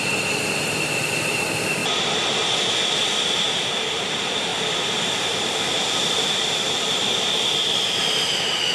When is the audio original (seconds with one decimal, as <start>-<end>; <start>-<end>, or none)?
1.8-3.5